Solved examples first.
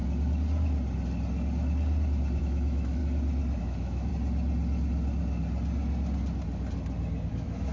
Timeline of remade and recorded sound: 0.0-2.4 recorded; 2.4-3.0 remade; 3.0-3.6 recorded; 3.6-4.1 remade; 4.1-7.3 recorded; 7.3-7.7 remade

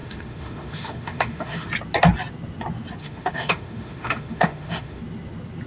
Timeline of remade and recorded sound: 0.0-1.7 remade; 1.7-3.0 recorded; 3.0-5.0 remade; 5.0-5.7 recorded

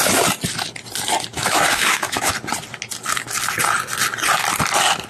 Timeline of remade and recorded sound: 0.0-1.3 recorded; 1.3-2.3 remade; 2.3-5.1 recorded

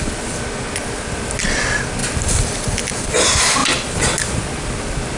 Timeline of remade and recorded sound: 0.0-5.2 recorded

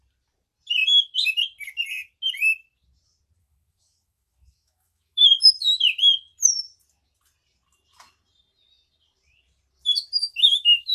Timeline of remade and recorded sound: 0.0-3.4 recorded; 3.4-5.4 remade; 5.4-10.2 recorded; 10.2-10.9 remade

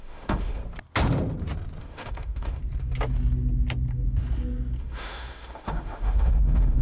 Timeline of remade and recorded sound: 0.0-0.6 remade; 0.6-1.8 recorded; 1.8-2.6 remade; 2.6-4.8 recorded; 4.8-6.8 remade

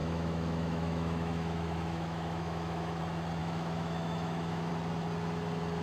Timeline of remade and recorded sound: 0.0-3.0 remade; 3.0-3.4 recorded; 3.4-4.7 remade; 4.7-5.8 recorded